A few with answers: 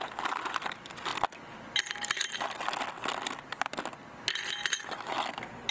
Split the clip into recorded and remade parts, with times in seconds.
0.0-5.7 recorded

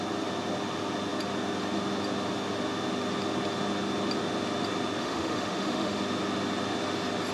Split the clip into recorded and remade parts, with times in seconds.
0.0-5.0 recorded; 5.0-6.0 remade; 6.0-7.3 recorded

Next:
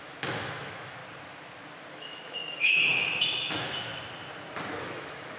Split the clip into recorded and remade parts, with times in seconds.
0.0-1.0 remade; 1.0-1.9 recorded; 1.9-3.9 remade; 3.9-4.8 recorded; 4.8-5.4 remade